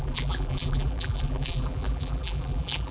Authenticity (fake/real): fake